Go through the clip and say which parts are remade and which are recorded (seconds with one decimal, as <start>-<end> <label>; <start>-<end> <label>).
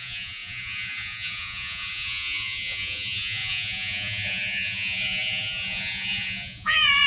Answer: 0.0-7.1 remade